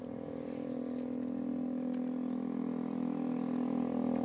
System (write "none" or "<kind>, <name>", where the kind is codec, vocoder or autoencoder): none